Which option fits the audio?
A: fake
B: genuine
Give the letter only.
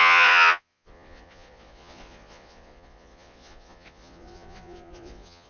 A